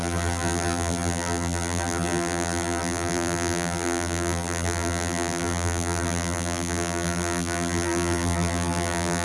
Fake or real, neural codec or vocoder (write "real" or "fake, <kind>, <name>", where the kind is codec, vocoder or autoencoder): fake, vocoder, BigVGAN v2